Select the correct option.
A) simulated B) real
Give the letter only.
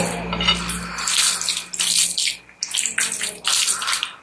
B